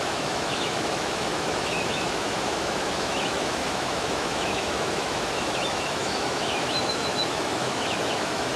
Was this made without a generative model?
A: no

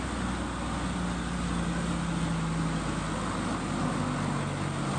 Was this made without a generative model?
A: yes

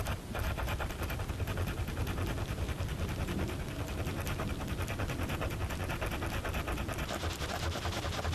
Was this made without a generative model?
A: yes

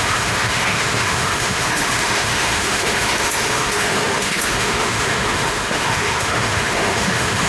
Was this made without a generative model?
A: no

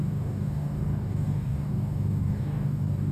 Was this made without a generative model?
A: no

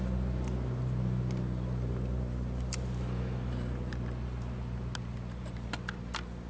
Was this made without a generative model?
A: yes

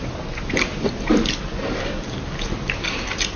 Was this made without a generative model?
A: yes